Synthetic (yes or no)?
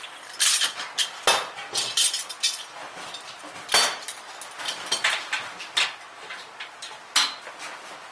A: no